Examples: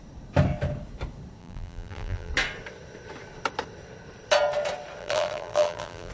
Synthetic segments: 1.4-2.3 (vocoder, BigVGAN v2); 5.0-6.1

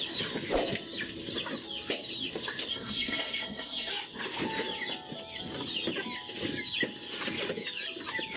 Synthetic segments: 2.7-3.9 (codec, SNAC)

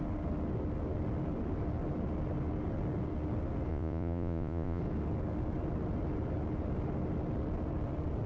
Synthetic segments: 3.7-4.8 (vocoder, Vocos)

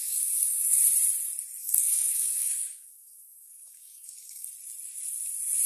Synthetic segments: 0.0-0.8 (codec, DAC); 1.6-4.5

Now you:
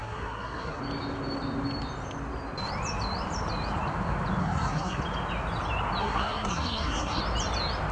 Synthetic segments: 0.0-0.8 (codec, SNAC); 4.4-5.0; 6.0-7.2

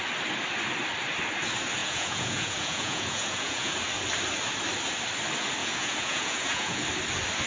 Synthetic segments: 1.8-3.7 (vocoder, Vocos); 5.6-6.8

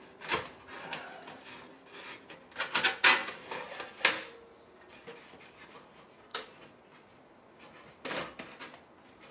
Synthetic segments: 6.3-7.2 (vocoder, Vocos)